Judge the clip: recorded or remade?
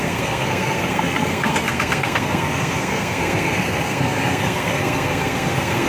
remade